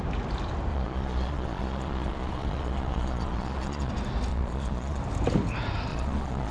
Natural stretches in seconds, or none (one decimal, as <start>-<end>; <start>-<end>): 0.0-0.7; 3.9-4.3; 5.0-5.9